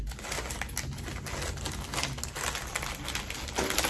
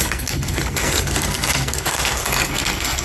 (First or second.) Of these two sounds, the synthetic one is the second